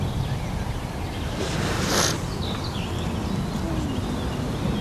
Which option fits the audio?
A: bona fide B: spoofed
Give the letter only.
A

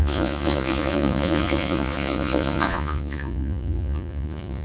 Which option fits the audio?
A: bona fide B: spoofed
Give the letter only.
B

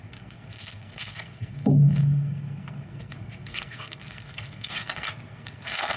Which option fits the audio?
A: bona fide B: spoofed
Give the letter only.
B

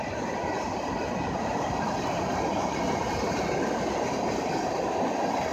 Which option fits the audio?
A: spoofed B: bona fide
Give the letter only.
B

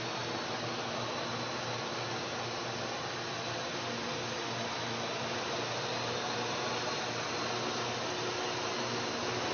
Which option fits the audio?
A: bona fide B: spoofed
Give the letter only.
A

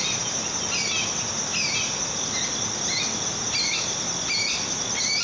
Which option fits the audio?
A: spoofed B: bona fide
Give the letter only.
B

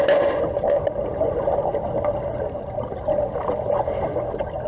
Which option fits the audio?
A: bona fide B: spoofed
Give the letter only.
A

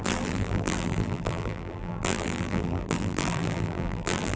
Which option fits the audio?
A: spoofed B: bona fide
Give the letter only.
A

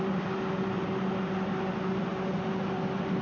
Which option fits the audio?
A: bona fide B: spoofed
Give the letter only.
A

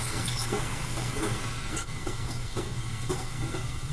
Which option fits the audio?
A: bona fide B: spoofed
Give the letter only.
B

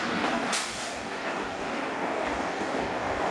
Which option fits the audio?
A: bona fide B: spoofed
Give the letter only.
B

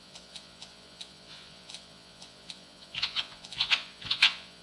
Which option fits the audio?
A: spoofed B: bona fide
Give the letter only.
A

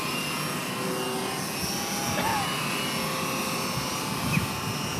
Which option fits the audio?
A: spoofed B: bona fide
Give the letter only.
B